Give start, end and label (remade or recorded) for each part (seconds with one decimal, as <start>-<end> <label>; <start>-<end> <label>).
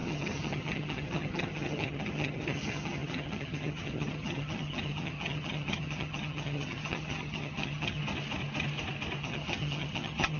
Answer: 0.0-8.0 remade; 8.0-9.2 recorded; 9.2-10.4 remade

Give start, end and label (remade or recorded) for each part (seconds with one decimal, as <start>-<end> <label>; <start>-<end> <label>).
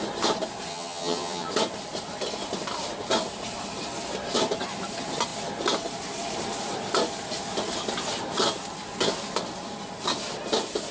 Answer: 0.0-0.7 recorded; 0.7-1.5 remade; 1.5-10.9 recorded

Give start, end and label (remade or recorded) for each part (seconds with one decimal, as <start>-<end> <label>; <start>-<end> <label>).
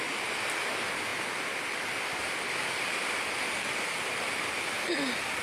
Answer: 0.0-5.4 recorded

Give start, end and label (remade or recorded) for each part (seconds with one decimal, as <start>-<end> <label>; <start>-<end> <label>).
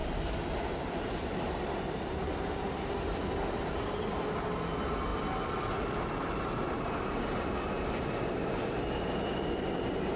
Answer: 0.0-10.2 recorded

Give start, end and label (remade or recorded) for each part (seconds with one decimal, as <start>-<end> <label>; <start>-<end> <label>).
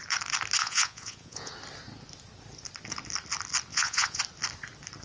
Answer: 0.0-0.6 recorded; 0.6-1.5 remade; 1.5-3.7 recorded; 3.7-4.2 remade; 4.2-5.0 recorded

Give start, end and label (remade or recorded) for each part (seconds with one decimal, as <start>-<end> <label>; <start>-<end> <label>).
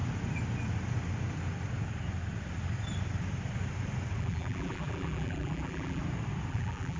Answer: 0.0-4.2 recorded; 4.2-6.0 remade; 6.0-6.5 recorded; 6.5-7.0 remade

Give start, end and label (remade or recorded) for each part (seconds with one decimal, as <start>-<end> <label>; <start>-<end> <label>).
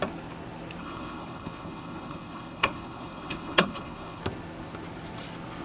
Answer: 0.0-0.8 recorded; 0.8-4.2 remade; 4.2-5.6 recorded